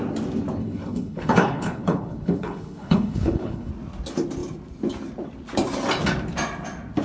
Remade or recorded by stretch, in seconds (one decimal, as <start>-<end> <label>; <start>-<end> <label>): 0.0-0.6 recorded; 0.6-3.7 remade; 3.7-7.0 recorded